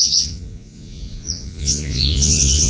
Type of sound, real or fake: fake